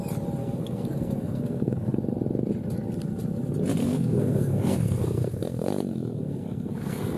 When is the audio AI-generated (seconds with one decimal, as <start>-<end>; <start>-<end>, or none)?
0.4-2.0; 3.8-7.2